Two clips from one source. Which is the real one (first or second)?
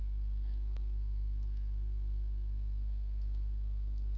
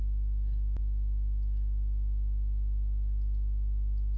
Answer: second